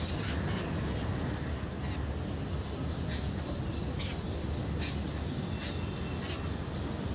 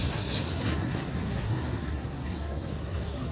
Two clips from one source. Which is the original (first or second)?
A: first